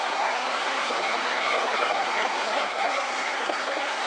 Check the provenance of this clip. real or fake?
fake